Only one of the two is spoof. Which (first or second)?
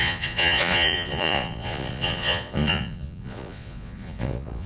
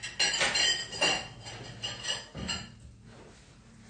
first